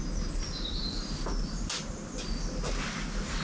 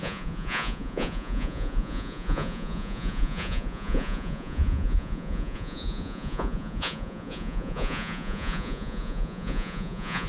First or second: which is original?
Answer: first